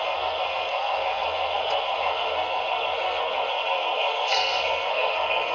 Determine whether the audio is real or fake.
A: fake